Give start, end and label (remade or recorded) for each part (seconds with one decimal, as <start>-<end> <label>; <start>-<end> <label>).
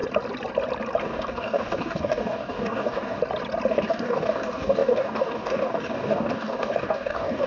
0.0-1.0 recorded; 1.0-3.2 remade; 3.2-3.7 recorded; 3.7-7.5 remade